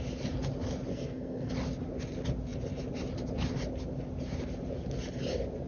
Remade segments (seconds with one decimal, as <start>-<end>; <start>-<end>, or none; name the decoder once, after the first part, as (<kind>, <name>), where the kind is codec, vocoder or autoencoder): 0.9-1.5 (codec, SNAC)